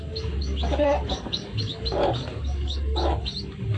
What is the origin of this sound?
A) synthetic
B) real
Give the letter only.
A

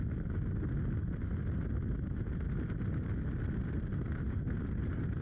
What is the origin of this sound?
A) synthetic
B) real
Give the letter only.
B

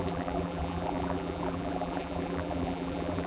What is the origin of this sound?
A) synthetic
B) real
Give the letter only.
A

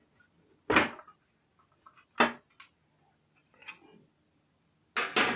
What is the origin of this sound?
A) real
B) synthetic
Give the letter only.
A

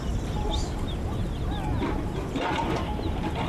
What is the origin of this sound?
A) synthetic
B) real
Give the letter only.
B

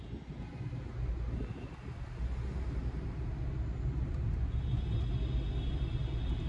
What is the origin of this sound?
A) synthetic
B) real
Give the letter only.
B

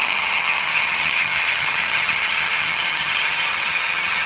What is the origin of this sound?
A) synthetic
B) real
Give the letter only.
A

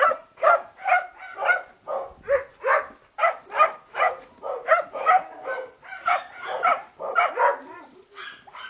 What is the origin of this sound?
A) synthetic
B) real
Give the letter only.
B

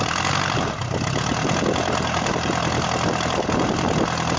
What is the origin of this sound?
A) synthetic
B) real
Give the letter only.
B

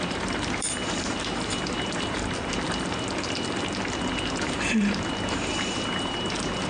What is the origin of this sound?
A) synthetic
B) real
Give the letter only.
A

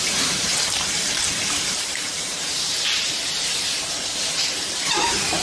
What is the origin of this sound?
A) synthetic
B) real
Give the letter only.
A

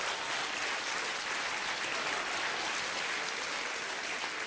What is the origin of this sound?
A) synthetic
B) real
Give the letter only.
B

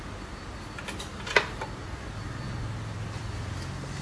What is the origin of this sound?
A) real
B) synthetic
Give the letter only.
A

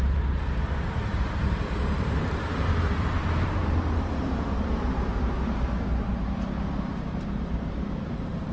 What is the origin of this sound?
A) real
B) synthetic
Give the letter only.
B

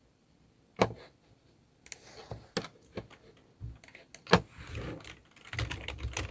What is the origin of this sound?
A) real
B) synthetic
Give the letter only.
A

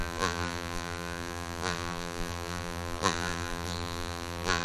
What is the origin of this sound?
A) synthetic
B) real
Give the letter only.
A